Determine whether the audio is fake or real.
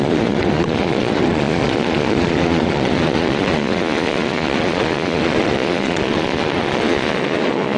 fake